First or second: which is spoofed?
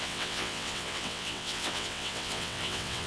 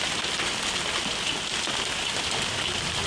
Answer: first